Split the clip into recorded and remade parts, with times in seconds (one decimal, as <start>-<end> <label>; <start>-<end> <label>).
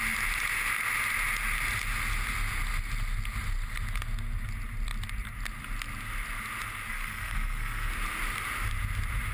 0.0-6.9 recorded; 6.9-7.9 remade; 7.9-9.3 recorded